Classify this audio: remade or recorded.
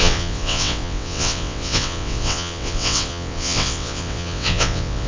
remade